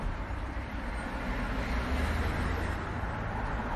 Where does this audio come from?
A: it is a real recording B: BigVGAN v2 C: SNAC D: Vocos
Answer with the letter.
A